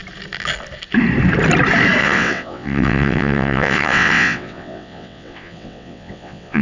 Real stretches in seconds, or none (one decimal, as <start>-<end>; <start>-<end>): 0.0-2.0